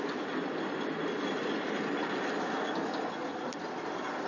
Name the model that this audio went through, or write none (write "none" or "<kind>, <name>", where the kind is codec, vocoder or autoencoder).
none